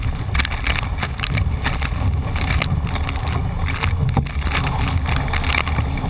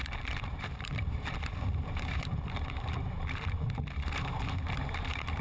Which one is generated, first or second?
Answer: second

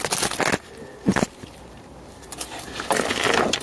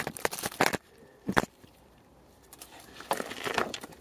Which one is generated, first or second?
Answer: second